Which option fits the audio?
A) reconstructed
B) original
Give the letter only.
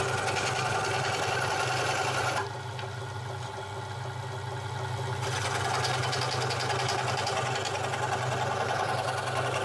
B